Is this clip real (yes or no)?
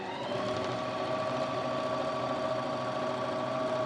yes